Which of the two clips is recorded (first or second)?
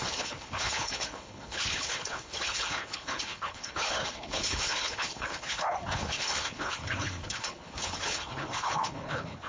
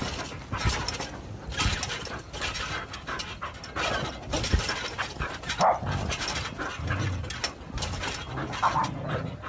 second